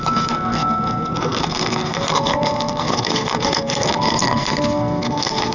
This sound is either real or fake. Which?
fake